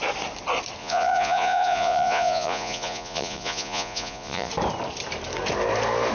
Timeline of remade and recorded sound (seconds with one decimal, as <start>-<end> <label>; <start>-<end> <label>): 0.0-0.8 recorded; 0.8-4.5 remade; 4.5-6.1 recorded